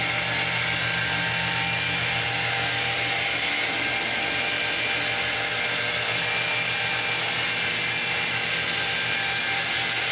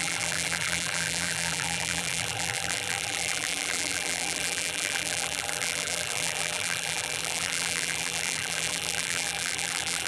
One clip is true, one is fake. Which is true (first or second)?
first